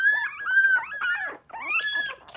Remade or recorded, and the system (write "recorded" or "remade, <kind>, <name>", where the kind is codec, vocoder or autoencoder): recorded